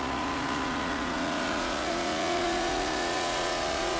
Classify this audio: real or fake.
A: fake